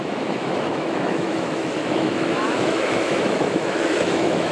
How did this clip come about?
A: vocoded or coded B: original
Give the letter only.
A